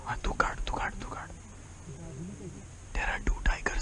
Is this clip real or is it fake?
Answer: real